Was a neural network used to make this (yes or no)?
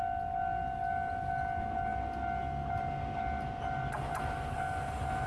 no